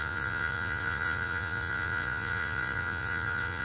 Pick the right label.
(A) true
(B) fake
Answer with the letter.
B